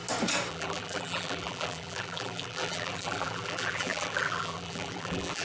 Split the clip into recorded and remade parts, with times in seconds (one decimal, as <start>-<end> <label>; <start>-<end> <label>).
0.0-0.5 recorded; 0.5-5.4 remade